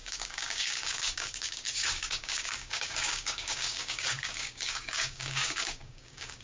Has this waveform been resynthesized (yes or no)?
yes